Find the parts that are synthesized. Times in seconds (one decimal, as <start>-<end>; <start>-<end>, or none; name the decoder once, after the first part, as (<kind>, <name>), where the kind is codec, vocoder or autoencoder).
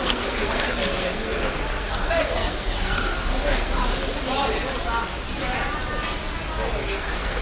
0.0-3.8 (codec, SNAC); 6.8-7.4